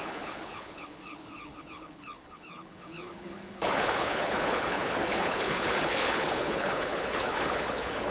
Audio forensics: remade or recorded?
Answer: remade